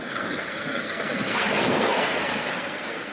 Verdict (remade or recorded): remade